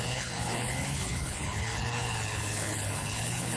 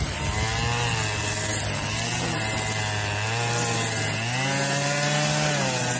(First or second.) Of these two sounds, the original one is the second